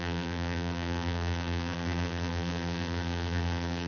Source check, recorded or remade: remade